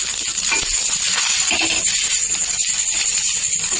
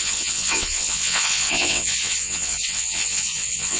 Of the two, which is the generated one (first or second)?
second